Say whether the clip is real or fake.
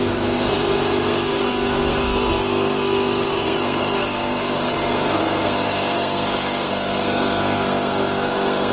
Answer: fake